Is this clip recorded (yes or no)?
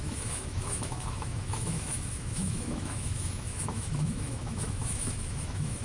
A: no